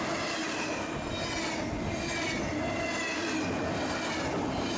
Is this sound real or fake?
real